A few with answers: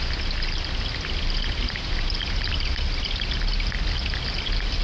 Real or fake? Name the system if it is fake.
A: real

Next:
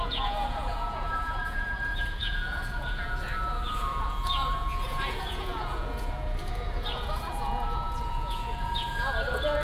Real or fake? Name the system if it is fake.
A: fake, vocoder, Vocos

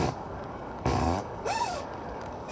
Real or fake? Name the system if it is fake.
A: fake, codec, DAC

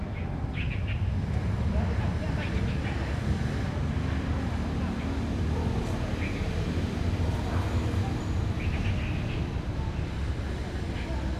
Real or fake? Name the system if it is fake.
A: real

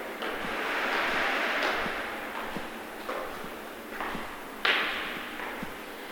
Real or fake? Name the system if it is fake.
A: real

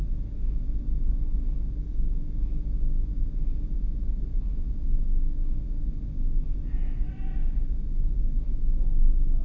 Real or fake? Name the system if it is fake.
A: real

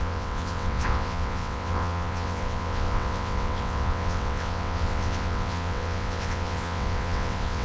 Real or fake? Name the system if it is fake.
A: fake, vocoder, WaveNeXt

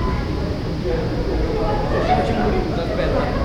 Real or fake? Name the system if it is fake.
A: real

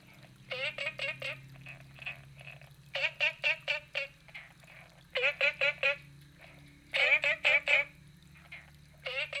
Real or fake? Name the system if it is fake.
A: real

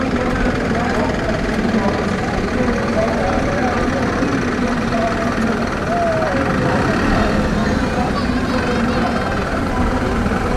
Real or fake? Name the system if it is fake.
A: real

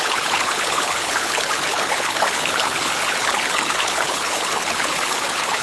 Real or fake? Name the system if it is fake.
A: fake, codec, HILCodec